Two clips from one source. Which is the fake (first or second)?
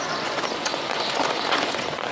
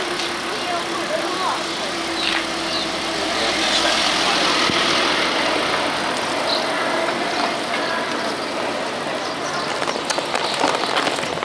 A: first